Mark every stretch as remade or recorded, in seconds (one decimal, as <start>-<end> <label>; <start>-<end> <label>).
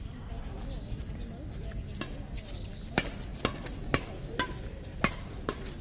0.0-5.8 recorded